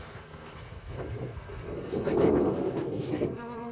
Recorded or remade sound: remade